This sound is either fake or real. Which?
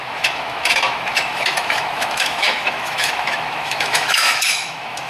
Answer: fake